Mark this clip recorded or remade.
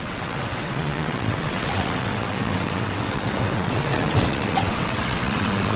remade